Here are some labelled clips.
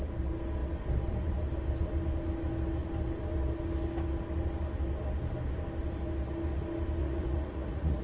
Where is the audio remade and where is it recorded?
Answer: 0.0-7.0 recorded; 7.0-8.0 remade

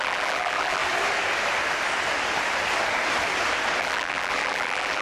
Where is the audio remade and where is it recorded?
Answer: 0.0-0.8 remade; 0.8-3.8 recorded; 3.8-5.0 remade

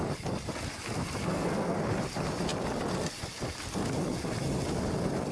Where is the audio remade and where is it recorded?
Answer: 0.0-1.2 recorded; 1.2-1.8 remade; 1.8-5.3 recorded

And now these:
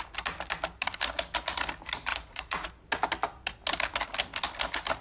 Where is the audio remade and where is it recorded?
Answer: 0.0-2.1 recorded; 2.1-2.7 remade; 2.7-5.0 recorded

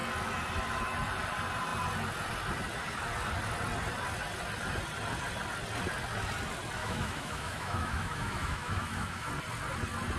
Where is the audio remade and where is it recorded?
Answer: 0.0-6.8 recorded; 6.8-9.3 remade; 9.3-10.2 recorded

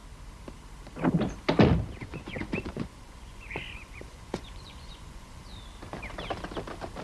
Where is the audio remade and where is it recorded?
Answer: 0.0-2.0 recorded; 2.0-5.4 remade; 5.4-7.0 recorded

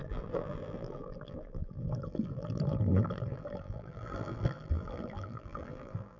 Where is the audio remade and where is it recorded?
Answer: 0.0-6.2 remade

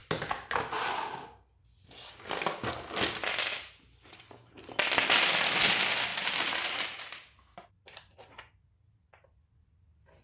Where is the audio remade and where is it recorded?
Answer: 0.0-6.1 recorded; 6.1-8.7 remade; 8.7-10.2 recorded